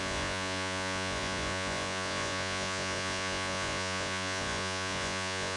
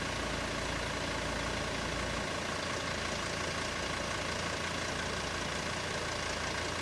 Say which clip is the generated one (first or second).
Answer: first